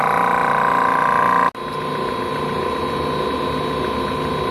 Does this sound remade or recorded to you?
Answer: recorded